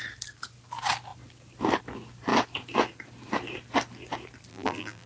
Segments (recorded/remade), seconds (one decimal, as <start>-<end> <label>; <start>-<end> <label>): 0.0-4.5 recorded; 4.5-5.1 remade